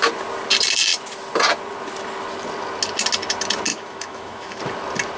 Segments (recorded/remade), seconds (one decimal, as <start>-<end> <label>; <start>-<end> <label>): 0.0-3.7 recorded; 3.7-4.6 remade; 4.6-5.2 recorded